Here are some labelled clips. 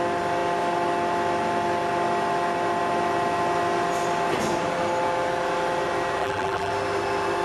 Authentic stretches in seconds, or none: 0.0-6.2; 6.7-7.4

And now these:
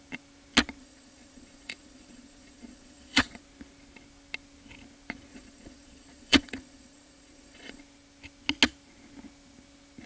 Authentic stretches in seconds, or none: 0.0-0.8; 3.4-5.3; 7.8-10.1

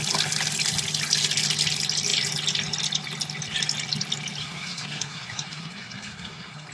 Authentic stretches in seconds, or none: 0.0-4.4

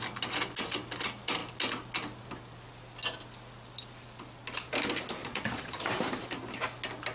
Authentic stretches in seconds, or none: 0.0-5.2; 5.9-7.1

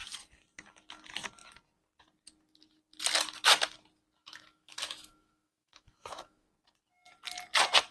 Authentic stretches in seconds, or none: 0.0-4.2; 6.5-7.9

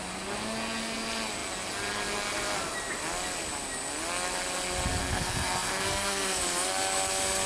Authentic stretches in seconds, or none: 0.0-5.0; 6.4-7.5

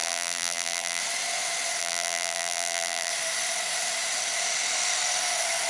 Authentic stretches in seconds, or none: 1.0-1.8; 3.1-5.7